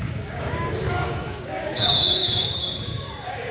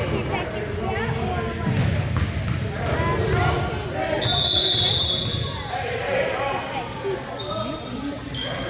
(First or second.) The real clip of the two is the second